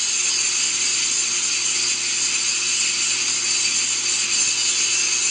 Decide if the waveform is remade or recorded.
recorded